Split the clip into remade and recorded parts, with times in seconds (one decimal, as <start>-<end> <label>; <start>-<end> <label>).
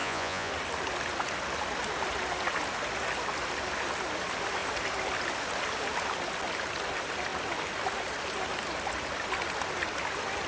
0.0-0.5 remade; 0.5-10.5 recorded